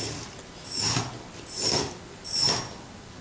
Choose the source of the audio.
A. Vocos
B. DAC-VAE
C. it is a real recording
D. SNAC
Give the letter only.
C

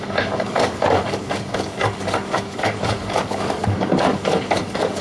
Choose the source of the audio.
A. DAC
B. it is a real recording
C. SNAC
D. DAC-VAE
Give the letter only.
A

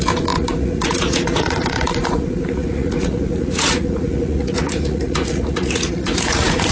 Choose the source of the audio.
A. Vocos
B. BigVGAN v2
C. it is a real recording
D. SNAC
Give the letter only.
A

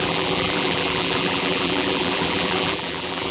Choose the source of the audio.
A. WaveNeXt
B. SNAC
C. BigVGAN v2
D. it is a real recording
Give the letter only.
C